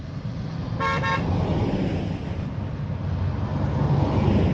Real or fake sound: real